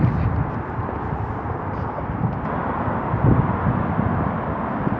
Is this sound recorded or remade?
recorded